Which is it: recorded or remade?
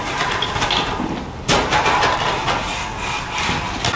recorded